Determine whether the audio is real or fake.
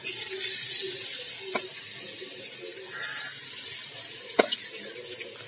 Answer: real